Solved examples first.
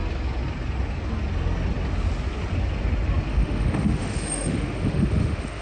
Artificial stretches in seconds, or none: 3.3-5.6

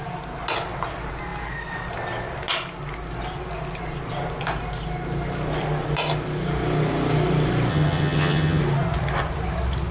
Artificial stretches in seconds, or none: 7.7-8.6

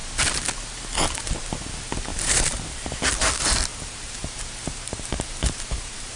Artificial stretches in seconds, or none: 2.1-3.0; 3.7-6.2

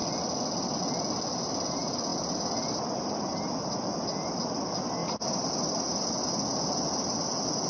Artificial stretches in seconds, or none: none

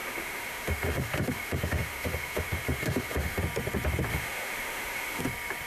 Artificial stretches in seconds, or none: 0.0-3.4; 4.1-5.2

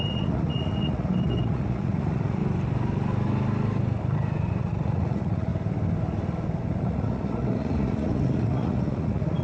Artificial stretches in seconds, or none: 0.0-2.4; 4.6-5.5; 6.8-9.4